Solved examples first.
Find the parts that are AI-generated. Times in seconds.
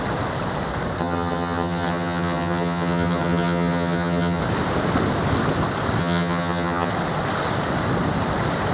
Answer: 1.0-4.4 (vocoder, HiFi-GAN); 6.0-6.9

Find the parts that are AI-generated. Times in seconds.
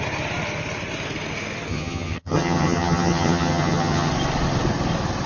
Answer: 1.7-4.1 (vocoder, HiFi-GAN)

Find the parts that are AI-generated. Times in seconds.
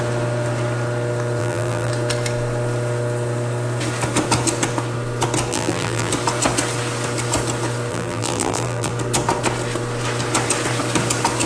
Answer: 1.4-1.9 (vocoder, BigVGAN v2); 5.5-6.1; 7.9-8.9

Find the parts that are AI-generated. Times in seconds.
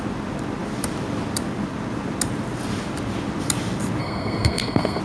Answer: 4.0-5.0 (codec, SNAC)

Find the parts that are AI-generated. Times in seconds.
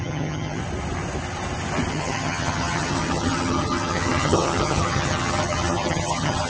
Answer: 0.0-0.6 (vocoder, HiFi-GAN); 1.9-6.5